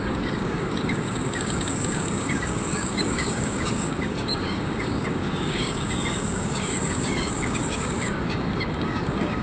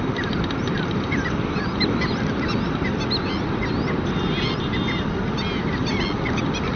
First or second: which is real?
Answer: second